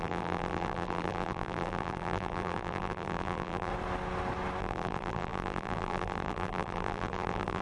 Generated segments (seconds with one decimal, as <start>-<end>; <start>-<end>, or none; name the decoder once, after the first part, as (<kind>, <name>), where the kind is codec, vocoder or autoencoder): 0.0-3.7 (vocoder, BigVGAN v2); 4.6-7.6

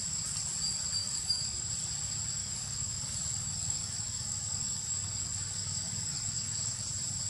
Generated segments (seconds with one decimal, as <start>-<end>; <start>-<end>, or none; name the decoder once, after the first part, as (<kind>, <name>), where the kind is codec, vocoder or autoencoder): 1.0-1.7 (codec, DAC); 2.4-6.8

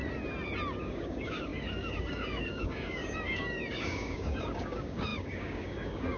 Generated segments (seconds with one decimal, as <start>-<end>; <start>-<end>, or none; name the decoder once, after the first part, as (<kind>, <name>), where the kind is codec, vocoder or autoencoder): 0.8-6.2 (codec, DAC)